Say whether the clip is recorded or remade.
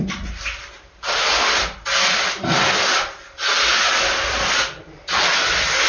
recorded